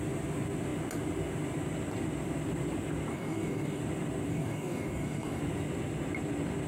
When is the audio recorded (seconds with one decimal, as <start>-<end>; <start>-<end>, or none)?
0.0-3.1; 3.8-4.3; 5.4-6.7